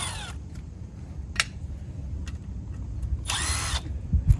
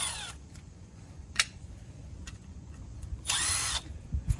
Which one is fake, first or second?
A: second